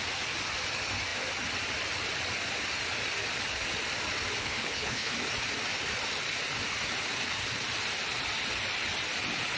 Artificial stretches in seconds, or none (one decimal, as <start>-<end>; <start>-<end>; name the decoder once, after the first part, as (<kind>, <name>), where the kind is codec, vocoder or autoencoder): 4.4-5.1 (codec, HILCodec)

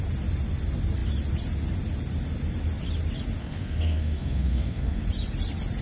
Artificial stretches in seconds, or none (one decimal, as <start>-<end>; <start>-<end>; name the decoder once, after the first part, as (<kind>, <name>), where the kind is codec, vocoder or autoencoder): 3.4-5.0 (codec, SNAC)

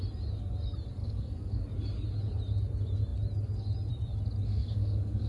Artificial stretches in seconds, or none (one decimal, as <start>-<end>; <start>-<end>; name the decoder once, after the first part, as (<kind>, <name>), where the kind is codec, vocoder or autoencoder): 1.0-1.6 (codec, SNAC); 4.5-5.3

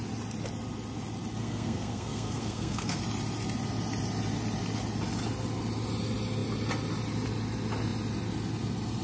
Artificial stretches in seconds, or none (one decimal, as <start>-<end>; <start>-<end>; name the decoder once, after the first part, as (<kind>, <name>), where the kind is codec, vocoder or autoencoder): 1.4-3.0 (codec, SNAC)

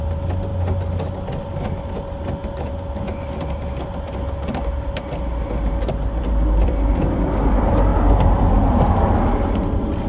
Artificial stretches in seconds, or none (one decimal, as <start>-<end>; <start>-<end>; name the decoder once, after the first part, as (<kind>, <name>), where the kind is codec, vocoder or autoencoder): 0.0-0.5 (vocoder, BigVGAN v2); 1.4-2.4; 5.7-7.9; 9.6-10.1

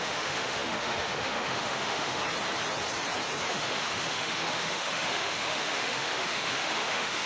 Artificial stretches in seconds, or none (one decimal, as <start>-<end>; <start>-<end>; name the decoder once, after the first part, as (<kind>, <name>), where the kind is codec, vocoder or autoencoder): 0.0-2.2 (autoencoder, DAC-VAE); 3.5-7.3

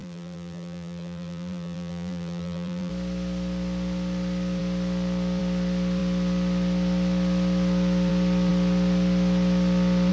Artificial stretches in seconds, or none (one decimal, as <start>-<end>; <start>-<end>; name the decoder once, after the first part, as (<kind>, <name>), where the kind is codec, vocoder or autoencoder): 0.0-2.9 (vocoder, BigVGAN v2)